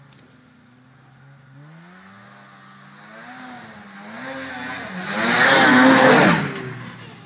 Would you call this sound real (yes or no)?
yes